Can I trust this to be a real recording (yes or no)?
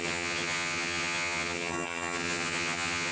no